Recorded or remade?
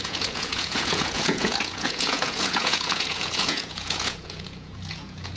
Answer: remade